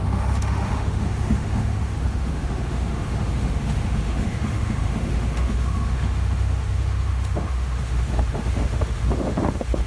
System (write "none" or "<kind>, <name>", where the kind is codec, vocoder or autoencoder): autoencoder, DAC-VAE